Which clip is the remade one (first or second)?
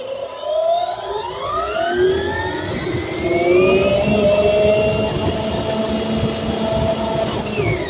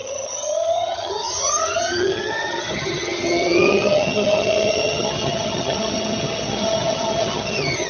second